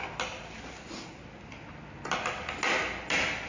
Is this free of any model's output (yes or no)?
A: yes